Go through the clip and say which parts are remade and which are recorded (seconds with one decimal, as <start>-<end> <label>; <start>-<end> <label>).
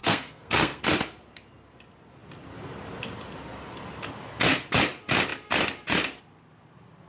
0.0-0.8 remade; 0.8-7.1 recorded